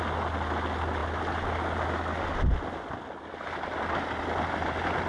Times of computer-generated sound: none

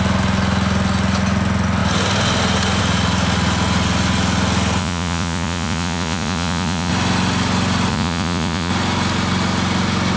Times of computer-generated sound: 4.8-6.9 (vocoder, Vocos); 7.9-8.7

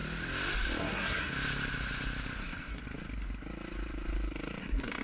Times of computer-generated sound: 0.8-1.3 (codec, SNAC); 2.4-2.8; 4.6-5.0

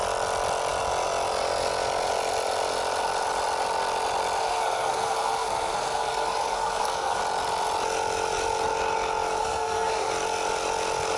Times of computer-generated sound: 4.4-7.2 (codec, SNAC); 9.4-10.1